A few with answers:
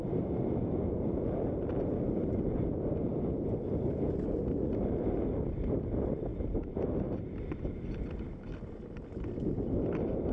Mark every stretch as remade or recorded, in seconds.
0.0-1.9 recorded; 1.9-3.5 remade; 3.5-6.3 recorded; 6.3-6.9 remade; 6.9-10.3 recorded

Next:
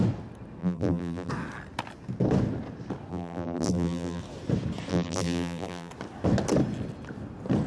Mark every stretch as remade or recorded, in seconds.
0.0-0.6 recorded; 0.6-1.3 remade; 1.3-3.1 recorded; 3.1-4.2 remade; 4.2-4.9 recorded; 4.9-5.9 remade; 5.9-7.7 recorded